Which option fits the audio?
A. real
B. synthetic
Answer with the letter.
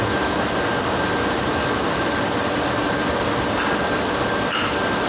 A